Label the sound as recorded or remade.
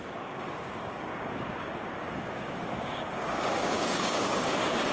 remade